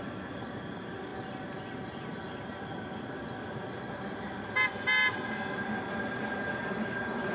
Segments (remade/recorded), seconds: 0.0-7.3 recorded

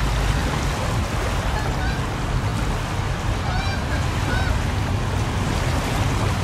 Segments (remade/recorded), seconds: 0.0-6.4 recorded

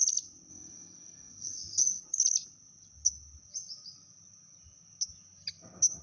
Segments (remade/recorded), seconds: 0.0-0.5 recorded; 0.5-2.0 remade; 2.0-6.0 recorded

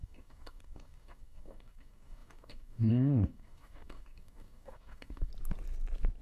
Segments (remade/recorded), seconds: 0.0-5.3 remade; 5.3-6.2 recorded

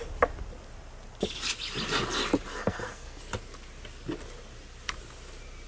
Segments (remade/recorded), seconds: 0.0-2.5 recorded; 2.5-3.2 remade; 3.2-5.7 recorded

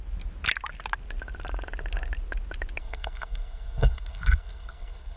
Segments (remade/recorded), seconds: 0.0-2.8 recorded; 2.8-5.2 remade

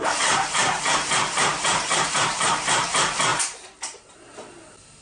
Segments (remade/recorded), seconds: 0.0-5.0 remade